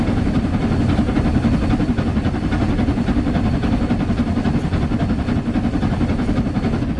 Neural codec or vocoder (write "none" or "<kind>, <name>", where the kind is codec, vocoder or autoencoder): none